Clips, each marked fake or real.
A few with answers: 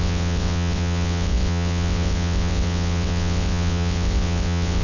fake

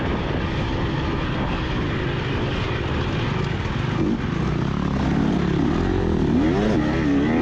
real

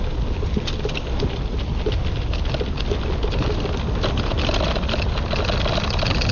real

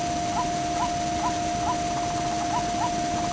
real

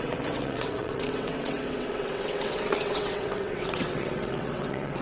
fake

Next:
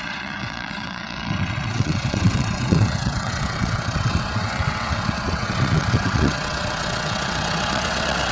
fake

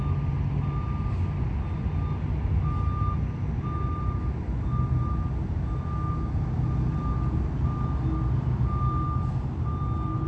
real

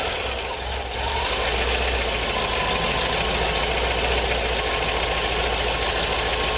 real